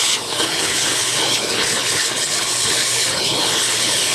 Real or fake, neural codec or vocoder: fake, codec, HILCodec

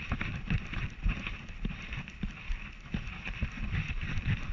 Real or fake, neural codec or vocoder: real